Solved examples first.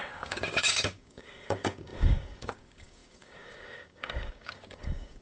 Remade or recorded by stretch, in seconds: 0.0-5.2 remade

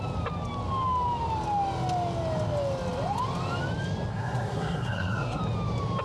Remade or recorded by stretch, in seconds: 0.0-4.1 recorded; 4.1-5.4 remade; 5.4-6.0 recorded

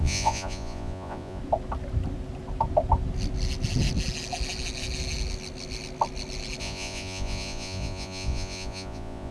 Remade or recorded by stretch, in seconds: 0.0-1.4 remade; 1.4-6.6 recorded; 6.6-9.3 remade

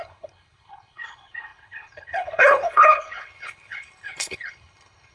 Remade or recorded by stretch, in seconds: 0.0-5.1 remade

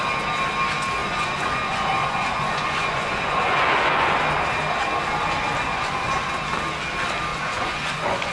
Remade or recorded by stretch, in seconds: 0.0-1.0 recorded; 1.0-4.2 remade; 4.2-5.7 recorded; 5.7-6.4 remade; 6.4-7.3 recorded; 7.3-8.3 remade

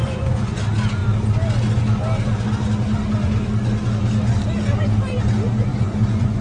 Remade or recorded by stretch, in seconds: 0.0-0.6 remade; 0.6-5.7 recorded; 5.7-6.4 remade